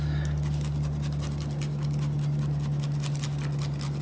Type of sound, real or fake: real